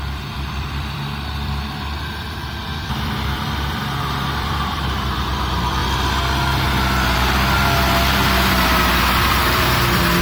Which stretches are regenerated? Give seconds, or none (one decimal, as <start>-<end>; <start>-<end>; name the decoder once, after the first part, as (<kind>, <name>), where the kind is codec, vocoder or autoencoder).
0.0-5.8 (vocoder, BigVGAN v2); 9.4-10.2